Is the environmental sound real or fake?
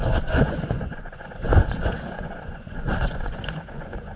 fake